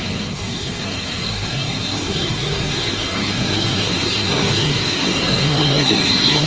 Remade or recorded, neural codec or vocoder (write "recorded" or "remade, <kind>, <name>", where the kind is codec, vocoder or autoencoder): remade, codec, SNAC